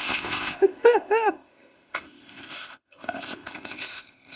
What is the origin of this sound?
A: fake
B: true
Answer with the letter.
A